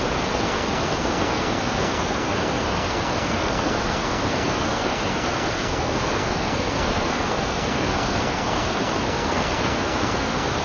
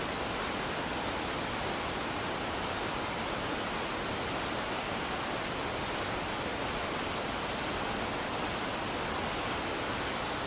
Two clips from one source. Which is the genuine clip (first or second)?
second